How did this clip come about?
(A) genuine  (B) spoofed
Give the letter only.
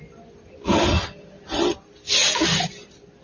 A